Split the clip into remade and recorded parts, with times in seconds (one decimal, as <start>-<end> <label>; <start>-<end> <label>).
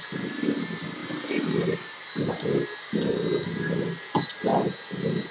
0.0-5.3 recorded